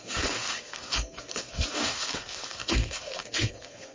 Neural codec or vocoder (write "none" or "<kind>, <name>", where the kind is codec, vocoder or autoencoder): codec, SNAC